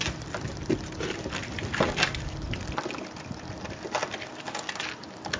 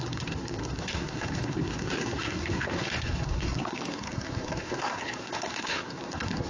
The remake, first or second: second